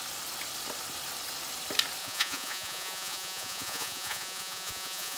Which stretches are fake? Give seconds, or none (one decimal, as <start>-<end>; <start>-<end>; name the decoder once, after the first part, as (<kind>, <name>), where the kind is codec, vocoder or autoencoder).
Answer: 2.0-5.2 (vocoder, Vocos)